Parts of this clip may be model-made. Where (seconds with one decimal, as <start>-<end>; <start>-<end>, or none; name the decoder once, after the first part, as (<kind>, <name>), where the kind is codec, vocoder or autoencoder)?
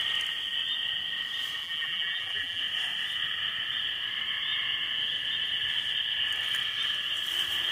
1.6-2.6 (vocoder, BigVGAN v2)